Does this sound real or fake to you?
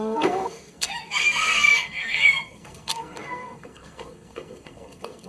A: fake